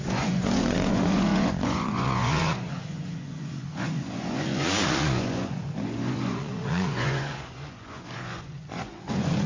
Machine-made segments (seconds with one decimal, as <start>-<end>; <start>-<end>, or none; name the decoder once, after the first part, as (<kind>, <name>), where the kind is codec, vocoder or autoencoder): 0.0-9.5 (vocoder, Vocos)